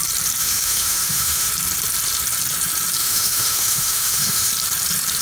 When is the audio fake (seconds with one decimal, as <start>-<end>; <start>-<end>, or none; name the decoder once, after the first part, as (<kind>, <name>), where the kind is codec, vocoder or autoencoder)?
0.4-1.5 (autoencoder, DAC-VAE); 3.0-4.5